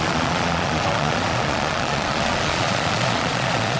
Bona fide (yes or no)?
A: no